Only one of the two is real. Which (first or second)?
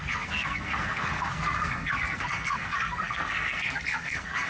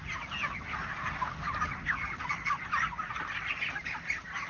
second